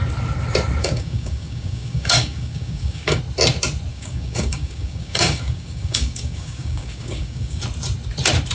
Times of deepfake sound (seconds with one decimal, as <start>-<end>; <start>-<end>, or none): 0.8-3.2; 3.9-7.6